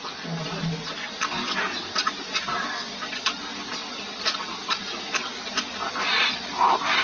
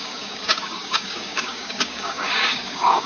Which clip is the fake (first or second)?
second